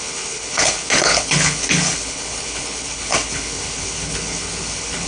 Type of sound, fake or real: fake